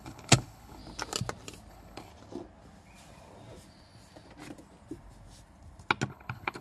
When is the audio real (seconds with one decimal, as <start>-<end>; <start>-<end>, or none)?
0.8-1.7; 2.1-6.1